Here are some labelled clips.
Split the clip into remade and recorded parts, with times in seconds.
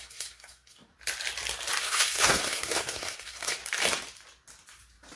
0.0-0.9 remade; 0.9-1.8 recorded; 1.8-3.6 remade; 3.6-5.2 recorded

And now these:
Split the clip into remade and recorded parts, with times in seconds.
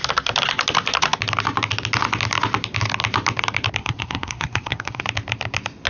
0.0-3.8 recorded; 3.8-5.0 remade; 5.0-5.9 recorded